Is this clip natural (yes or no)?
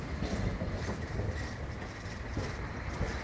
yes